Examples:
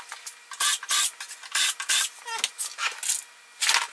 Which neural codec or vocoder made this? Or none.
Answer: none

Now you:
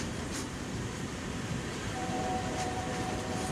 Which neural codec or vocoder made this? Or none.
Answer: vocoder, BigVGAN v2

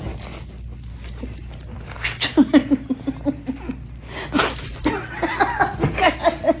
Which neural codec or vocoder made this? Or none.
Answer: none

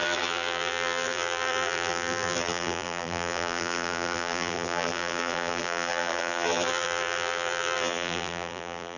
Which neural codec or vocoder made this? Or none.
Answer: vocoder, BigVGAN v2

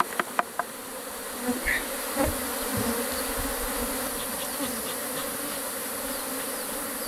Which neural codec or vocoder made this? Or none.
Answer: none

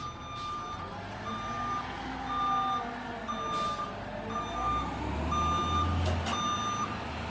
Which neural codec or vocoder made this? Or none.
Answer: none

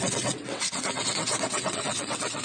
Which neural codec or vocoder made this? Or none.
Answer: vocoder, WaveNeXt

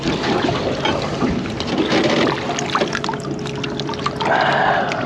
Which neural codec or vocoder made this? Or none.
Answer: none